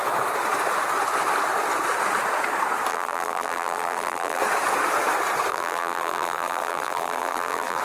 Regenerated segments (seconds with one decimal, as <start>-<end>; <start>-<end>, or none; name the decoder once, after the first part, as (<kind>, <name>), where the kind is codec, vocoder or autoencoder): 2.9-4.4 (vocoder, BigVGAN v2); 5.5-7.8